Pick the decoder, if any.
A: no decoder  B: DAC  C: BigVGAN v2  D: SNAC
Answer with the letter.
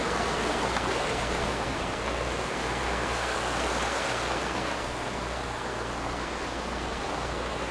D